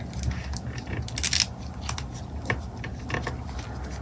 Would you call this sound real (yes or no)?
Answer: yes